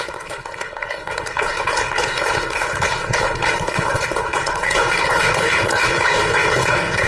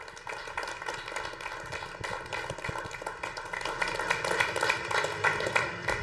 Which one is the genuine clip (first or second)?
second